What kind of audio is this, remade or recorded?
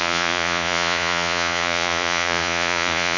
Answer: remade